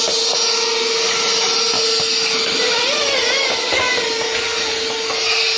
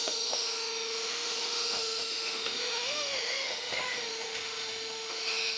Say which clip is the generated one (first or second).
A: second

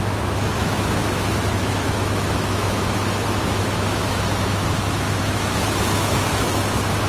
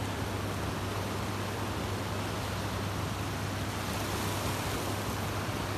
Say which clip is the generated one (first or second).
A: first